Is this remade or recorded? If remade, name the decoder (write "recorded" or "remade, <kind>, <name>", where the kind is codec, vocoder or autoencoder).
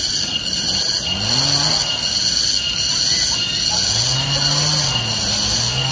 recorded